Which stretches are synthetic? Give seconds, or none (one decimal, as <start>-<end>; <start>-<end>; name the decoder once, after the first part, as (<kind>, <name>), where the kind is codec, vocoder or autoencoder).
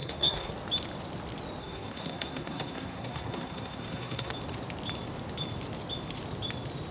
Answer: 0.0-0.5 (codec, SNAC); 1.6-4.3